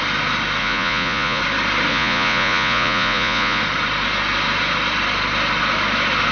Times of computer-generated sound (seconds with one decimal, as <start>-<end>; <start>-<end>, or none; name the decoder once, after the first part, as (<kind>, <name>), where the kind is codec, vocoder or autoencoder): 0.6-1.4 (vocoder, Vocos); 1.9-3.6